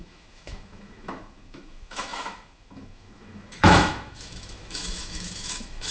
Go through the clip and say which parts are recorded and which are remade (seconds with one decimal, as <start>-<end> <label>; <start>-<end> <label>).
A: 0.0-5.9 remade